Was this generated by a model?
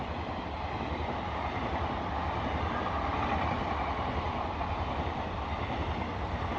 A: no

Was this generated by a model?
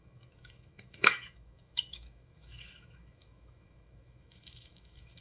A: yes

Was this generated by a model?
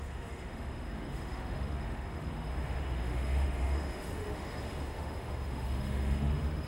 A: yes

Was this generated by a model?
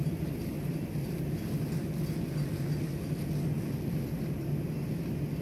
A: no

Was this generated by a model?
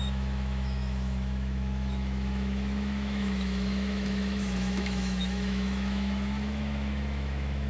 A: yes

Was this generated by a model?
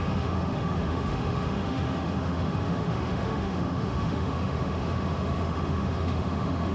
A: yes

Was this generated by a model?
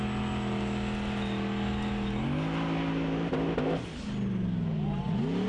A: no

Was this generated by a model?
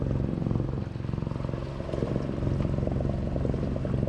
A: no